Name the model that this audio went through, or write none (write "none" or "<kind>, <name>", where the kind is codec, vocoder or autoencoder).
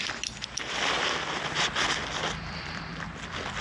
none